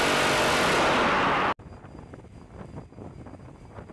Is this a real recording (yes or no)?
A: yes